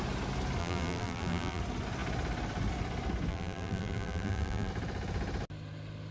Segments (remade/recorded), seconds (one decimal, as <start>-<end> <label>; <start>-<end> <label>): 0.0-0.6 recorded; 0.6-1.6 remade; 1.6-3.3 recorded; 3.3-4.7 remade; 4.7-6.1 recorded